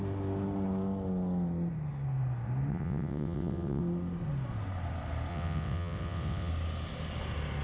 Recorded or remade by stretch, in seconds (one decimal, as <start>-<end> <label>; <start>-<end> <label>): 0.0-2.7 recorded; 2.7-3.8 remade; 3.8-5.3 recorded; 5.3-6.5 remade; 6.5-7.6 recorded